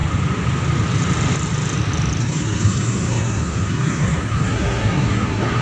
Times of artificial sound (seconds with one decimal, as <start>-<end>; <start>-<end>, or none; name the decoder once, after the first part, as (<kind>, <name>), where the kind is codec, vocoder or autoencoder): 2.2-5.6 (codec, SNAC)